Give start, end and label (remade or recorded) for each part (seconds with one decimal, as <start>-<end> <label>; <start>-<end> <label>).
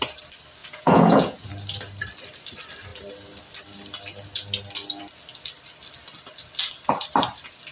0.0-0.6 recorded; 0.6-1.5 remade; 1.5-7.7 recorded